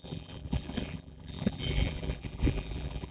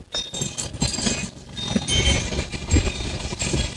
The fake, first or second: first